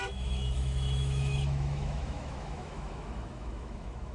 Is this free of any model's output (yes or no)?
no